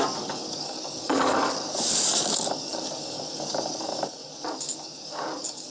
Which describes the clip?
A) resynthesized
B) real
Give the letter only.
A